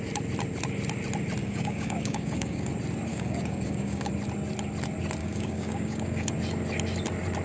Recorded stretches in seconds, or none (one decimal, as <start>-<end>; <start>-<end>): 0.0-1.4; 2.7-3.1; 4.1-5.2; 6.3-7.4